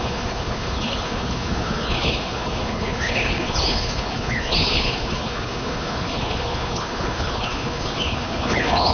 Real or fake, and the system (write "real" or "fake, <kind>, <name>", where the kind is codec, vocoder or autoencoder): fake, codec, HILCodec